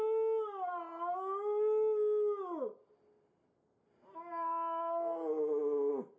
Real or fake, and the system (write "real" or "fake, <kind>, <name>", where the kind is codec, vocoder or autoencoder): real